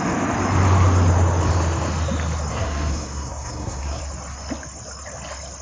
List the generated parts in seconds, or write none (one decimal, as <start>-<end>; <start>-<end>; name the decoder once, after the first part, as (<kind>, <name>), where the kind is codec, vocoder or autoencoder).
2.5-4.0 (codec, SNAC)